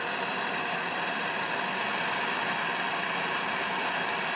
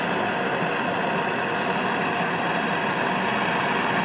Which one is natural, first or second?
second